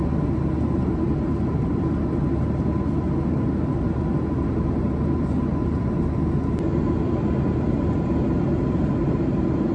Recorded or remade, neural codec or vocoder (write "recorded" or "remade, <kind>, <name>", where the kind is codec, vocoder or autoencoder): recorded